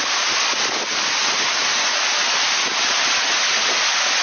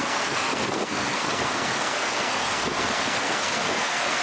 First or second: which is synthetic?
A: second